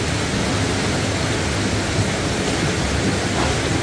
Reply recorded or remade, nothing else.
recorded